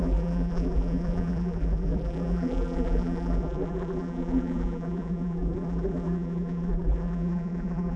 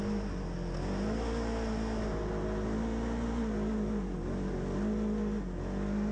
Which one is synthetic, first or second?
first